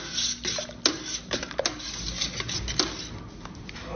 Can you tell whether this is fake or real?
real